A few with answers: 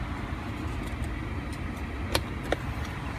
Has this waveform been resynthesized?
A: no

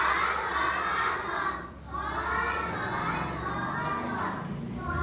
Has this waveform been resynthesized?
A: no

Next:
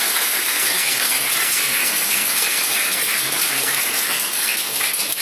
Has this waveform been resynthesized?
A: yes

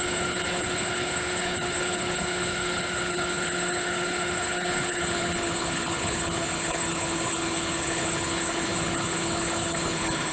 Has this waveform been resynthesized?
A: yes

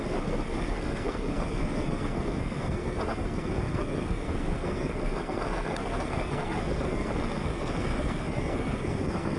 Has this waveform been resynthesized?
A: yes